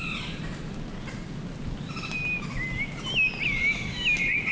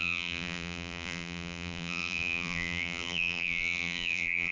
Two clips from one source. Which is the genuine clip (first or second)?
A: first